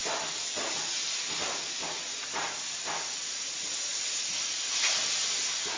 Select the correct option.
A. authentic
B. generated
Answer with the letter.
A